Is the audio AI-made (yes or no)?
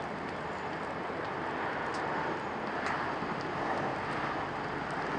no